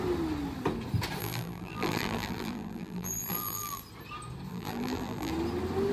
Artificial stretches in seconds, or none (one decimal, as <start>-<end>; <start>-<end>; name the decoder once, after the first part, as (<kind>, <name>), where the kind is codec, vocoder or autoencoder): 1.2-3.8 (vocoder, BigVGAN v2); 4.5-5.3